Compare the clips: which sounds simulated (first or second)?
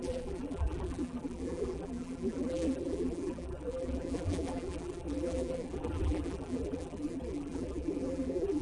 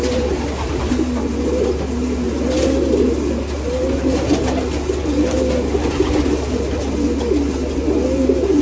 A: first